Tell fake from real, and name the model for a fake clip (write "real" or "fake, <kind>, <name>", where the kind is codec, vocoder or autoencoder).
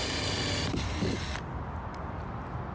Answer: real